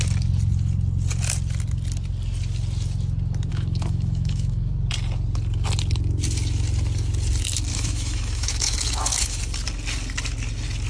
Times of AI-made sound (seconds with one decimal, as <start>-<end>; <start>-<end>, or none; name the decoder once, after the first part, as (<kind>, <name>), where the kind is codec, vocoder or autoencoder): 3.5-4.7 (autoencoder, DAC-VAE); 7.7-9.4